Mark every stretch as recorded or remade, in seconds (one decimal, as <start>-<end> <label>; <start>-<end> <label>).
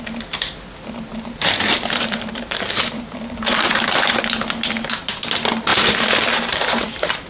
0.0-1.1 recorded; 1.1-4.2 remade; 4.2-5.7 recorded; 5.7-7.3 remade